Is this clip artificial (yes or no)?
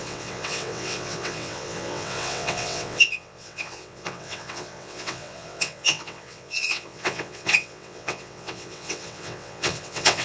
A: yes